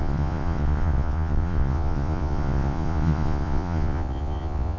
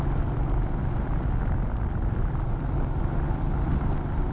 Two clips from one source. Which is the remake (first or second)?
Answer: first